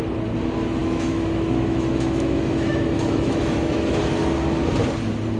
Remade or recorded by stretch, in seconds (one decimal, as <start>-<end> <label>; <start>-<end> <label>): 0.0-0.8 recorded; 0.8-4.0 remade; 4.0-5.4 recorded